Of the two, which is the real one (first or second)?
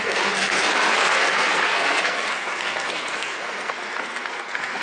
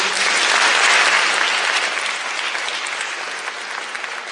second